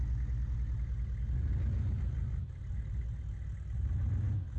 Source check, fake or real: real